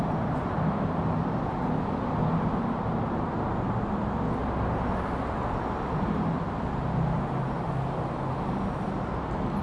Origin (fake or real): real